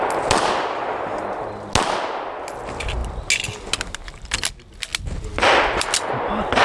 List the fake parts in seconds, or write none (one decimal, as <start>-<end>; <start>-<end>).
none